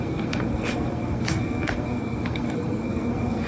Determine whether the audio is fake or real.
fake